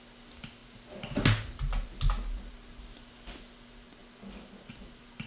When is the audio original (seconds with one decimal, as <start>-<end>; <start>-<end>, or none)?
0.0-5.3